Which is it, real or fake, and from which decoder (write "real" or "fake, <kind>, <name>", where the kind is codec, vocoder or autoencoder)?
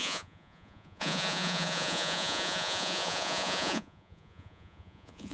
fake, vocoder, Vocos